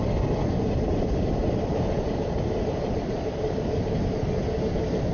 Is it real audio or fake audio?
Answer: real